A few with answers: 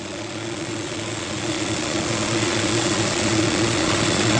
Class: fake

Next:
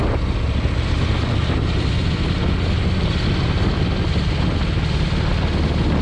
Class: real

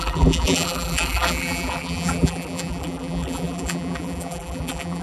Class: fake